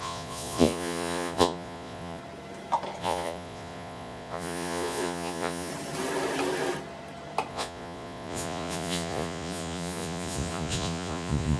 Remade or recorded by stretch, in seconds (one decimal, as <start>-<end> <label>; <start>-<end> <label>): 0.0-2.2 remade; 2.2-3.0 recorded; 3.0-5.7 remade; 5.7-7.5 recorded; 7.5-11.6 remade